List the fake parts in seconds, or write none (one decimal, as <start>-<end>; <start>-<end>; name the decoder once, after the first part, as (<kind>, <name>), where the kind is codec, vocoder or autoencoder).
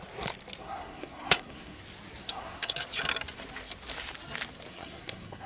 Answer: 0.6-1.8 (codec, SNAC); 2.2-2.7; 4.7-5.5